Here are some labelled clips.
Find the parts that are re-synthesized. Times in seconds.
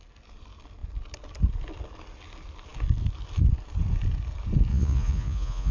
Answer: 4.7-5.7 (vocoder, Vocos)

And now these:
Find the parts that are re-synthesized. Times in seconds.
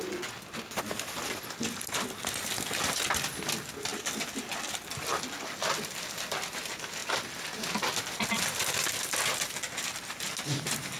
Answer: none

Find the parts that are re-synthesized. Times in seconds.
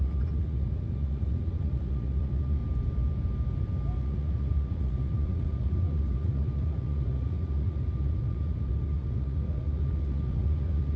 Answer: 0.0-2.6 (vocoder, Vocos); 4.0-11.0